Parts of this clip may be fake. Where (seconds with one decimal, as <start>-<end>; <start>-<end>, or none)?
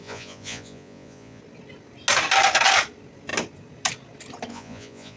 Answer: 0.0-1.4; 4.5-5.2